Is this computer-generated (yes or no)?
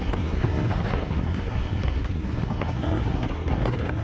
yes